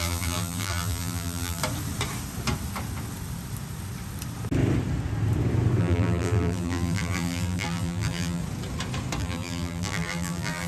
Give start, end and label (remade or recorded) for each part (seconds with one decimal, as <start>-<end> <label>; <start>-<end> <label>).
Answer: 0.0-1.6 remade; 1.6-5.8 recorded; 5.8-8.4 remade; 8.4-9.2 recorded; 9.2-10.7 remade